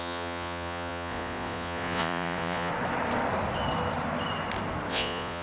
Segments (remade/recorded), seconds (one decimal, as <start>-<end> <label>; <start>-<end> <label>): 0.0-2.7 remade; 2.7-4.9 recorded; 4.9-5.4 remade

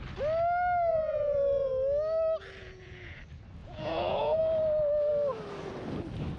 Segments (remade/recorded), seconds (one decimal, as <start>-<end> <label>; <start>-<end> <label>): 0.0-0.9 recorded; 0.9-1.7 remade; 1.7-2.6 recorded; 2.6-3.2 remade; 3.2-3.6 recorded; 3.6-4.4 remade; 4.4-6.4 recorded

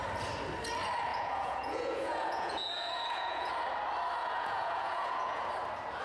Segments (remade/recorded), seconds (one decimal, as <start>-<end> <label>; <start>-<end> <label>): 0.0-1.1 recorded; 1.1-3.5 remade; 3.5-4.2 recorded; 4.2-5.5 remade; 5.5-6.0 recorded